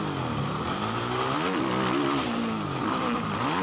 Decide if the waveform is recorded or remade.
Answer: recorded